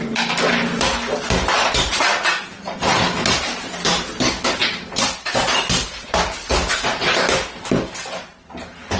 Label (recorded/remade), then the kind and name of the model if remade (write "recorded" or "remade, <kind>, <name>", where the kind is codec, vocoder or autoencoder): recorded